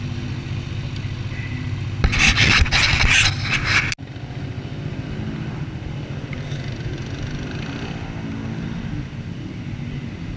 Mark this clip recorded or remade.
recorded